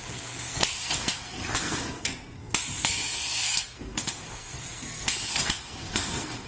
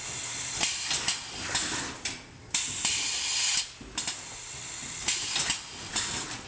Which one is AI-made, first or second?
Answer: first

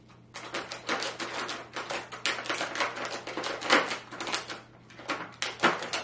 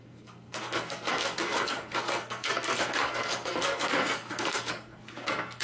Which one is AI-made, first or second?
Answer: second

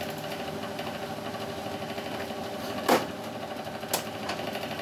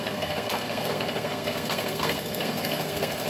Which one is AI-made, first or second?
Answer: second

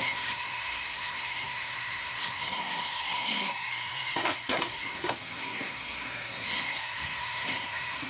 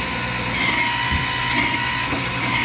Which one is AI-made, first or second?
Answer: first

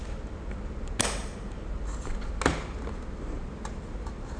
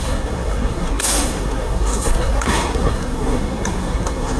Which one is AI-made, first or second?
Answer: second